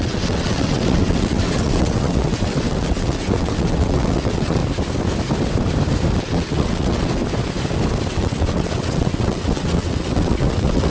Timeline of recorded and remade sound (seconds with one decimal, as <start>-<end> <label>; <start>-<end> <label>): 0.0-4.6 remade; 4.6-6.2 recorded; 6.2-7.2 remade; 7.2-8.1 recorded; 8.1-10.9 remade